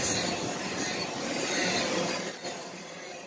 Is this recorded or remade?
recorded